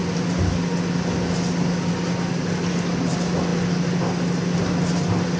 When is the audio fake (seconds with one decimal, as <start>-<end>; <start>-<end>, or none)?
none